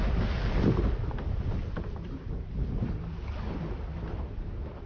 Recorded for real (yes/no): yes